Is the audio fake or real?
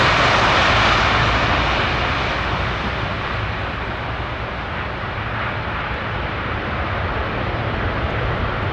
real